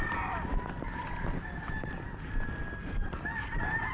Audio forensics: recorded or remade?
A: recorded